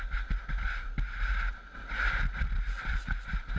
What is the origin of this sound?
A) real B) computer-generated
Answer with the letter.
A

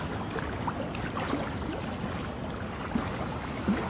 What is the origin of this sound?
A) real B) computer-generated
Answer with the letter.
A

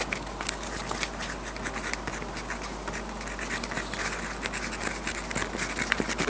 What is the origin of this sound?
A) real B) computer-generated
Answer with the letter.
A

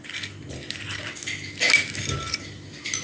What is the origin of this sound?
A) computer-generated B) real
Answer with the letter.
B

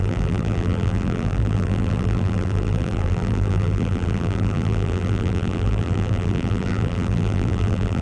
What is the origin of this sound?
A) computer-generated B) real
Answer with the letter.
A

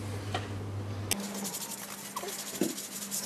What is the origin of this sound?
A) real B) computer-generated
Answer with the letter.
A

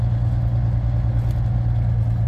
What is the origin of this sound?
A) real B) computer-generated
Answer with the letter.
A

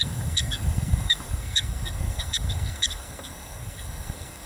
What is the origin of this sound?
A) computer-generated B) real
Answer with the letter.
A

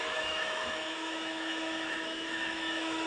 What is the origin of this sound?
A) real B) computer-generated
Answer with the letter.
B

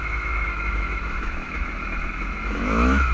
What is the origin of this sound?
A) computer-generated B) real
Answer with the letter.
A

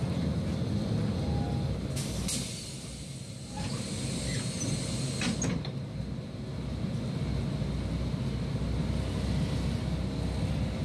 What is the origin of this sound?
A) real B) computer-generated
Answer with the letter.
A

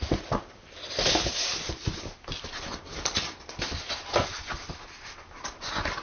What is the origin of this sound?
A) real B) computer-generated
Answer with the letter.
A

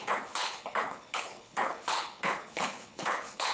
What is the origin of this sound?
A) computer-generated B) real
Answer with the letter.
A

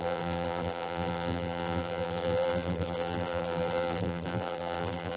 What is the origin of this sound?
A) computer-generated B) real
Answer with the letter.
A